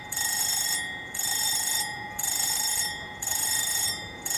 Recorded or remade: remade